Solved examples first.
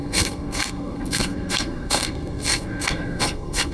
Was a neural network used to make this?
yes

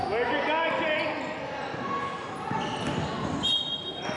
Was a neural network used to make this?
no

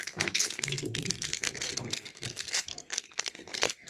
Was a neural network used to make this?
yes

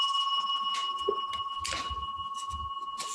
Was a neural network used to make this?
no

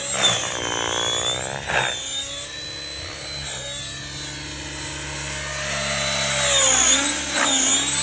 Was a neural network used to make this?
no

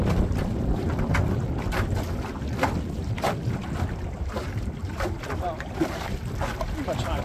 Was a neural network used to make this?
no